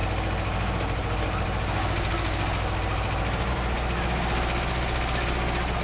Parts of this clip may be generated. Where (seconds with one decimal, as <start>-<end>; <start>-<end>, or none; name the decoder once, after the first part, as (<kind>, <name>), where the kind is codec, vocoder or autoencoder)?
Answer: none